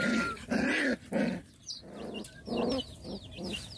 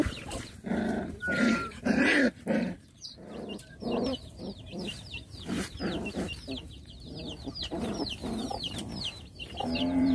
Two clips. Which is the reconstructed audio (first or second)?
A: second